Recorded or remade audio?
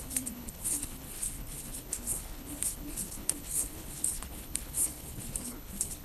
remade